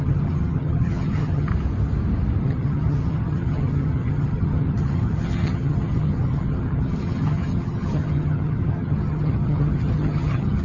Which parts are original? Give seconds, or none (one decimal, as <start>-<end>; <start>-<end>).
1.5-2.4